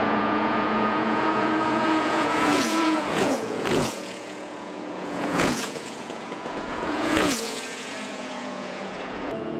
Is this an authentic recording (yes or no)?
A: no